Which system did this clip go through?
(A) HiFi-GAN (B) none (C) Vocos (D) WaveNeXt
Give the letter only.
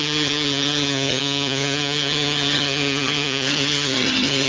A